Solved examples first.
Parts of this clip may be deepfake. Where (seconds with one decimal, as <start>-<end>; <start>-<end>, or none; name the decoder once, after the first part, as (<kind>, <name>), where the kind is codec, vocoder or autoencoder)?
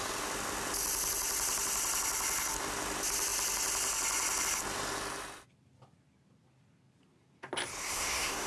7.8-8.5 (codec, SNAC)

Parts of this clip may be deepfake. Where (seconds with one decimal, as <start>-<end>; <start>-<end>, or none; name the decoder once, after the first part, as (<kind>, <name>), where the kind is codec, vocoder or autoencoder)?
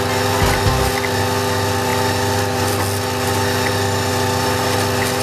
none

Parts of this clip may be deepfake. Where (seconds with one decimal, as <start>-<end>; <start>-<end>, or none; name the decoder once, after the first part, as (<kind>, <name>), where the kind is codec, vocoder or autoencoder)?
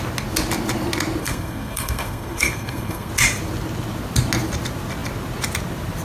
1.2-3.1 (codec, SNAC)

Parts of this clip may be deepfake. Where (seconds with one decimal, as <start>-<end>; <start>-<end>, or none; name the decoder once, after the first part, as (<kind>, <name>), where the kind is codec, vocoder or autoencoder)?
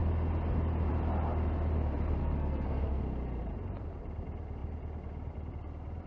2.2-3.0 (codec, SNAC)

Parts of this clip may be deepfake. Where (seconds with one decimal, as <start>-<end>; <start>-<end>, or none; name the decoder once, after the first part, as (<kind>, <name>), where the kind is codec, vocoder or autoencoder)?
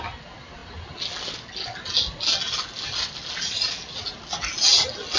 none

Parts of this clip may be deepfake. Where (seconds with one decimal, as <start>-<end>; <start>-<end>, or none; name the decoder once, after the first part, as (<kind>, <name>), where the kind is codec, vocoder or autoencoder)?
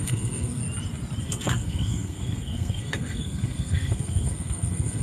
0.0-0.6 (codec, SNAC); 1.2-5.0